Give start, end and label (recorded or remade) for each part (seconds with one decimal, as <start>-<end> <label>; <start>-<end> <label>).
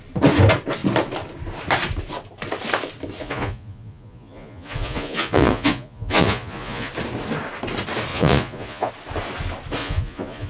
0.0-3.2 recorded; 3.2-6.9 remade; 6.9-8.1 recorded; 8.1-8.9 remade; 8.9-9.8 recorded; 9.8-10.5 remade